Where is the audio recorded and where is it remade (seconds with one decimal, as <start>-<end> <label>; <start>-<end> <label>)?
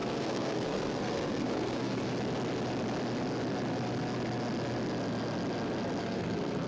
0.0-2.0 remade; 2.0-6.0 recorded; 6.0-6.7 remade